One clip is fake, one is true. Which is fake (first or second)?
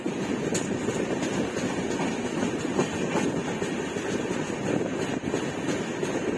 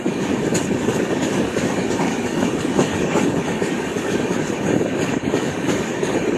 second